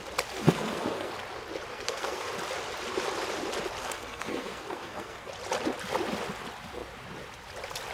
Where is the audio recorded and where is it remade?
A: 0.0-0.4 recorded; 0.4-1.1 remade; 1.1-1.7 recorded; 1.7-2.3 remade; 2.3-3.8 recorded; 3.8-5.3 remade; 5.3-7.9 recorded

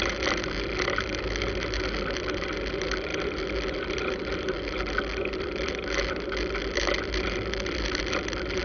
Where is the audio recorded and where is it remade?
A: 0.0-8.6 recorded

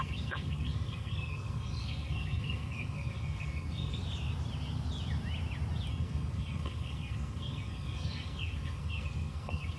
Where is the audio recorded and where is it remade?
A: 0.0-4.0 remade; 4.0-5.9 recorded; 5.9-9.8 remade

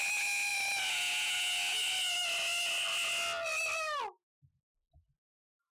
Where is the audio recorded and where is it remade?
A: 0.0-5.8 recorded

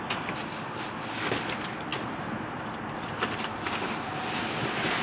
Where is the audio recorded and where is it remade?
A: 0.0-5.0 recorded

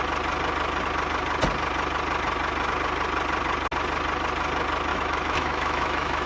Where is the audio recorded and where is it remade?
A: 0.0-4.9 recorded; 4.9-6.3 remade